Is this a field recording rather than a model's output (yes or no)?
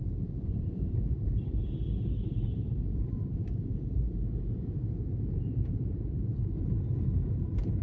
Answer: no